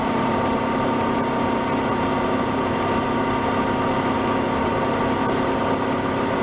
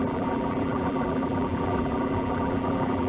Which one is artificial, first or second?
second